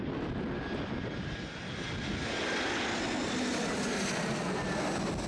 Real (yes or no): yes